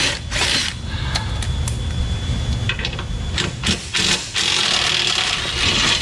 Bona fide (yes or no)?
yes